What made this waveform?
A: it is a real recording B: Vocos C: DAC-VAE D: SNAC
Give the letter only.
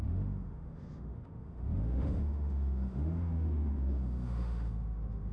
C